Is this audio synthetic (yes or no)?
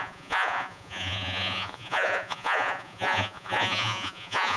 yes